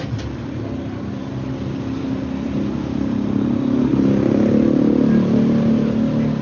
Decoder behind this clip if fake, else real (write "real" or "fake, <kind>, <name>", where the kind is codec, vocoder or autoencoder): real